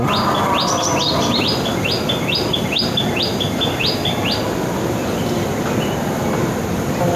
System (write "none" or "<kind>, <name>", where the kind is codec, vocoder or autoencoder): none